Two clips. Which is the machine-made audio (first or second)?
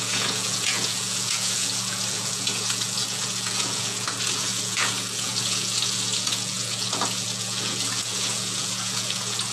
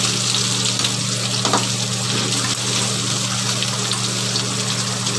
first